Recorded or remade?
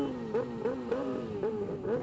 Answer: recorded